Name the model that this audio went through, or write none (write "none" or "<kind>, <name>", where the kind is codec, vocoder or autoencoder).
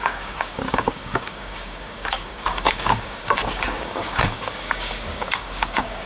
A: codec, DAC